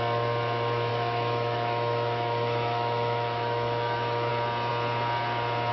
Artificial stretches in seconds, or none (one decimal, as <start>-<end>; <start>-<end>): 0.9-4.3